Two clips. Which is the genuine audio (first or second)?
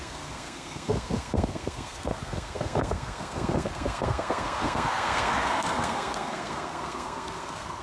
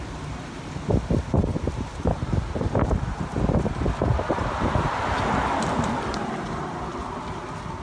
second